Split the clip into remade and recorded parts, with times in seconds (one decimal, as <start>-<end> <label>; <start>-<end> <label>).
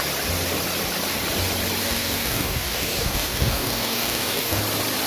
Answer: 0.0-1.8 recorded; 1.8-4.6 remade; 4.6-5.1 recorded